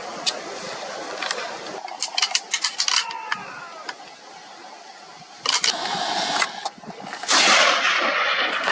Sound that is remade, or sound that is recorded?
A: recorded